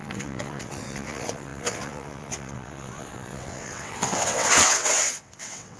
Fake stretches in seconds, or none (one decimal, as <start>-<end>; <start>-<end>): 0.0-5.8